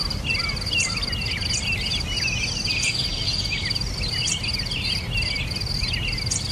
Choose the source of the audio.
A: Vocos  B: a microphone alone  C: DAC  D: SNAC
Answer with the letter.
B